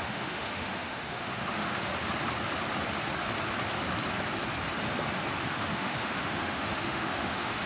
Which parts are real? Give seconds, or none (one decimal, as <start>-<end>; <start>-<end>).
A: 1.9-5.5